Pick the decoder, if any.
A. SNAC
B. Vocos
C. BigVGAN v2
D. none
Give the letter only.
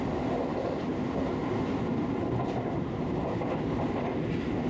D